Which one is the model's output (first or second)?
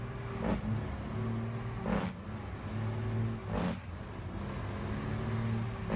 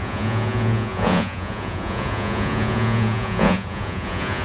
second